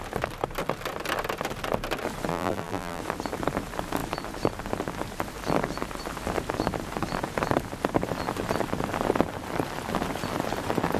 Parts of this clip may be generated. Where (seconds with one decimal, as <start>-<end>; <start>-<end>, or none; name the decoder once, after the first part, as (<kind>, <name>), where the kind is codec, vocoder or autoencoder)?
2.3-3.0 (vocoder, BigVGAN v2)